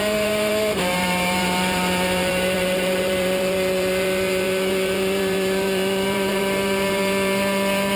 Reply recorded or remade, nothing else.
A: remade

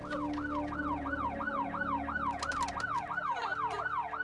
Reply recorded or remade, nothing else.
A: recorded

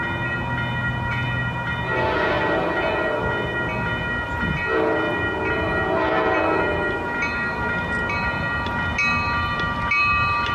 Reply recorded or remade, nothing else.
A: recorded